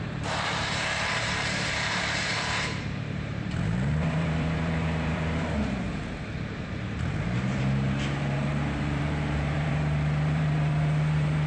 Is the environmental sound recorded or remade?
remade